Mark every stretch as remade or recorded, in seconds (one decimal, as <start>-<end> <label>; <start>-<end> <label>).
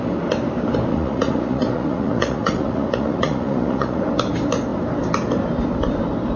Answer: 0.0-0.9 recorded; 0.9-4.0 remade; 4.0-6.4 recorded